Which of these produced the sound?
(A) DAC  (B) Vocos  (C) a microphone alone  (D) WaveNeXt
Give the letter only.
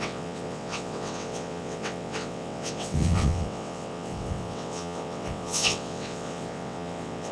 D